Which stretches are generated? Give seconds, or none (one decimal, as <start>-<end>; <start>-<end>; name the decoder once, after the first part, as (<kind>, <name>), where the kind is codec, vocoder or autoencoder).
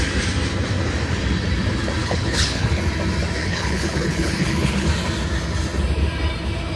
2.0-2.8 (codec, HILCodec); 3.4-4.9